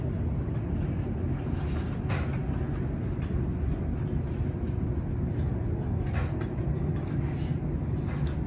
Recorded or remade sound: recorded